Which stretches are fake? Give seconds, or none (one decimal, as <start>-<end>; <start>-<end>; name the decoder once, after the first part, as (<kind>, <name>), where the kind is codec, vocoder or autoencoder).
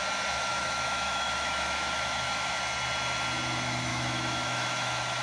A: 0.5-2.6 (autoencoder, DAC-VAE); 3.9-5.2